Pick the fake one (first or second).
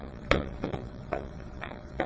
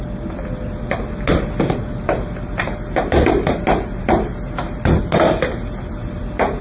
first